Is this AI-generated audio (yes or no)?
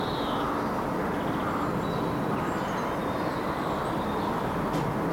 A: no